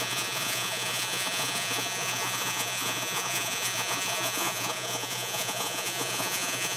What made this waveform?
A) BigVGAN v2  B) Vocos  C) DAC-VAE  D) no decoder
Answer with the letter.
B